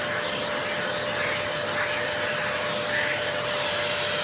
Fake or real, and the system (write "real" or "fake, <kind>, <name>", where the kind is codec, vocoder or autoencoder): real